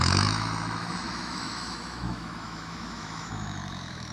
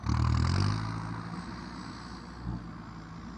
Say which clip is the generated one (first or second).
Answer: first